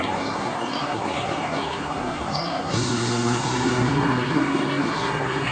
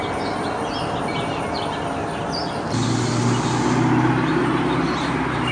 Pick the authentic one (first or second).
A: second